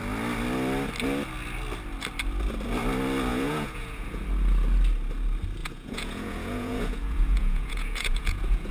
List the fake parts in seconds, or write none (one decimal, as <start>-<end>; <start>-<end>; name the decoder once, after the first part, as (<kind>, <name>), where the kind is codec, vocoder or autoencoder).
3.3-4.2 (vocoder, Vocos); 5.6-8.7